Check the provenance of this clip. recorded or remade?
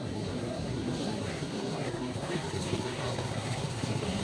remade